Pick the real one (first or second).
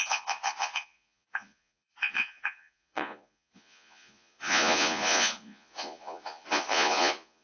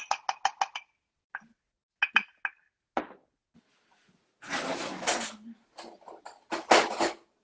second